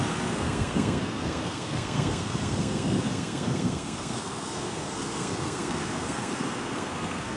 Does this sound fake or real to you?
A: fake